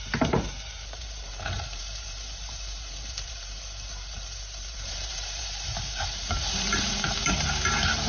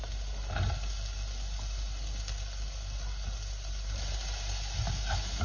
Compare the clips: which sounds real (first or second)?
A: second